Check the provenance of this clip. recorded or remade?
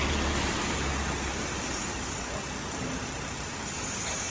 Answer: recorded